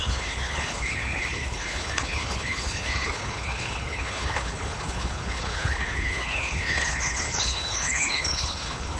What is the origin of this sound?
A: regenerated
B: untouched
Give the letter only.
A